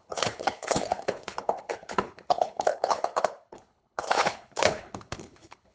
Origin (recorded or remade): remade